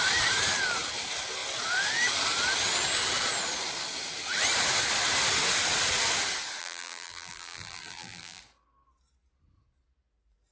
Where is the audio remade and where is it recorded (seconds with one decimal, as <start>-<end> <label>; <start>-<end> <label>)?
0.0-6.6 recorded; 6.6-8.4 remade; 8.4-10.5 recorded